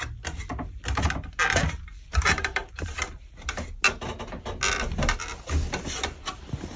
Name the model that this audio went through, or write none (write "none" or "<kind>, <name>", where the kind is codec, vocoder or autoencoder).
none